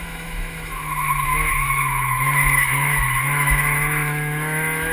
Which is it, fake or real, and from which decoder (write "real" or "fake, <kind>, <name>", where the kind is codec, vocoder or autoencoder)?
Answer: fake, autoencoder, DAC-VAE